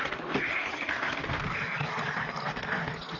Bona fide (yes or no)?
yes